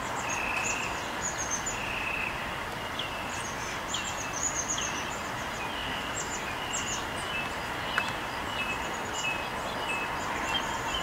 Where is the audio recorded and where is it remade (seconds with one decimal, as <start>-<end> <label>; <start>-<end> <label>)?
0.0-5.8 recorded; 5.8-6.5 remade; 6.5-11.0 recorded